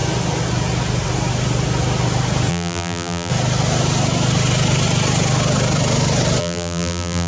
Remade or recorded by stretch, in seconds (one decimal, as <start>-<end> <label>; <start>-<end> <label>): 0.0-2.5 recorded; 2.5-3.3 remade; 3.3-6.4 recorded; 6.4-7.3 remade